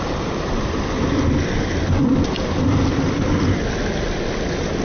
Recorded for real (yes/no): yes